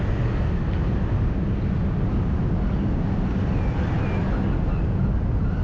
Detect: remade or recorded recorded